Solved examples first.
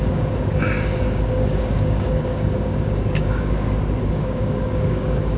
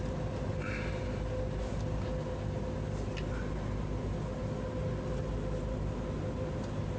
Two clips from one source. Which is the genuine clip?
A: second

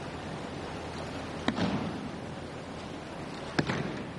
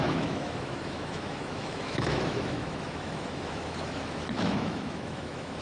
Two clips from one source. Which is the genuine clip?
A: first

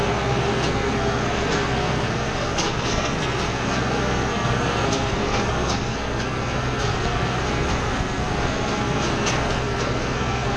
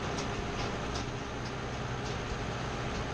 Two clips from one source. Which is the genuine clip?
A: second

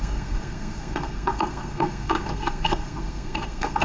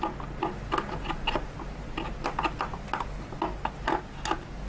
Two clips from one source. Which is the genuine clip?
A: second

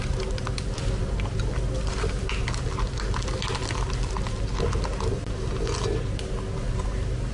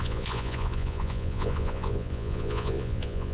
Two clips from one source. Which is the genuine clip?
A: first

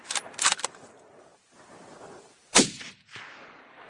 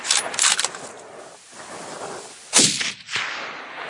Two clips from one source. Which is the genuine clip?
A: second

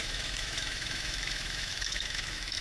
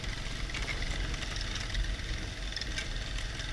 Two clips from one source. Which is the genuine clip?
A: second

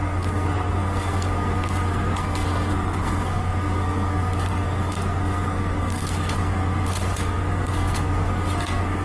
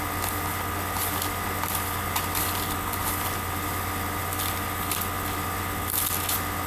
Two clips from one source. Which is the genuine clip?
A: second